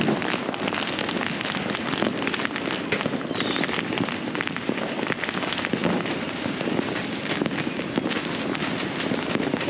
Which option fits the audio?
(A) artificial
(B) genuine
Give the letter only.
B